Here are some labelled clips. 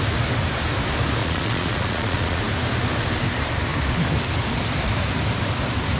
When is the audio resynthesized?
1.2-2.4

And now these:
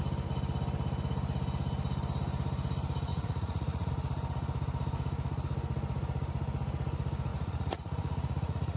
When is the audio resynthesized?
3.1-3.9; 7.3-8.8

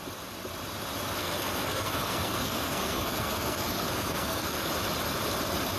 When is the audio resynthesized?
1.2-4.7

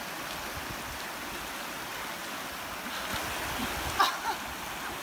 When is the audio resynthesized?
none

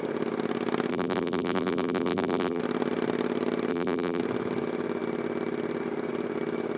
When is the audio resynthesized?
0.9-2.6; 3.7-4.2